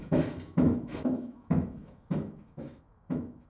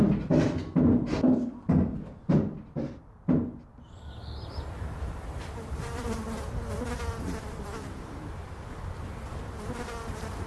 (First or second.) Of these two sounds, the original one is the second